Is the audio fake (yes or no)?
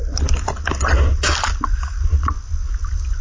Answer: no